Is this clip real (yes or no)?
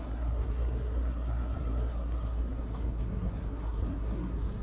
no